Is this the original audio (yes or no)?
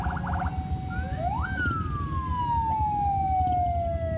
yes